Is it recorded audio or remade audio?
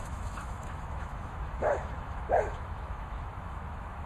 remade